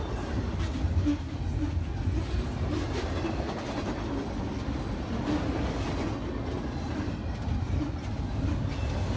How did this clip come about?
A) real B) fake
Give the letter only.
A